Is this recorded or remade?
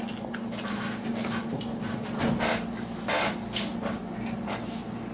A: recorded